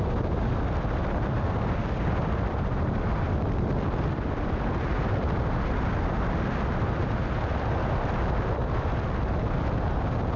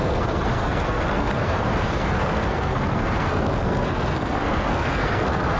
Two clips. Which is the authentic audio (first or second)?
first